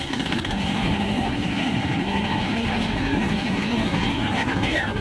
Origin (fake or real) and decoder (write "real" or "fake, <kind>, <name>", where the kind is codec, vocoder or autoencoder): fake, codec, SNAC